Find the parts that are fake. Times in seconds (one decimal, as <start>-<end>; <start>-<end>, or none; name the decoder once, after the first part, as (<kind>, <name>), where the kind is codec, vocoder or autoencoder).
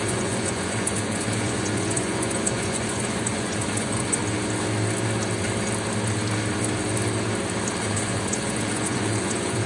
0.0-4.2 (vocoder, Vocos); 7.8-9.7